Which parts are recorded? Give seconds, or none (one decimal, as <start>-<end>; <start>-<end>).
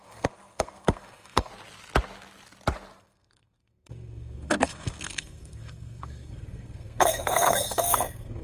1.5-3.0